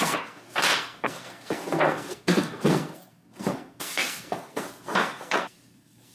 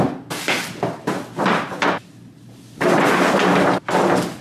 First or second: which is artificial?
first